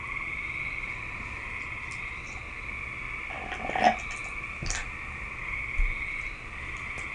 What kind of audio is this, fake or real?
real